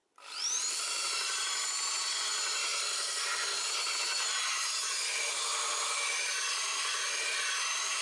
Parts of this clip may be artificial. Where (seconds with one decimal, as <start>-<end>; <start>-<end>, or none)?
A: none